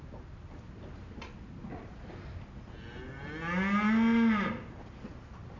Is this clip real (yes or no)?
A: yes